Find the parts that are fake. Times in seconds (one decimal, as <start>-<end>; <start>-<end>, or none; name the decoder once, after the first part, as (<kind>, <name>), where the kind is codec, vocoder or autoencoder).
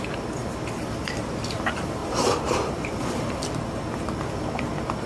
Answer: 2.0-3.3 (vocoder, BigVGAN v2)